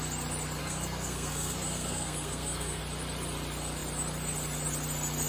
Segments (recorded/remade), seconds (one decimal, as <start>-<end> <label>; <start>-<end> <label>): 0.0-0.6 recorded; 0.6-2.8 remade; 2.8-5.3 recorded